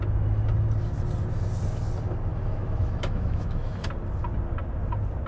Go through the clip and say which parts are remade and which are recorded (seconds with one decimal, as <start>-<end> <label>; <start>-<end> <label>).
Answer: 0.0-2.3 recorded; 2.3-3.8 remade; 3.8-5.3 recorded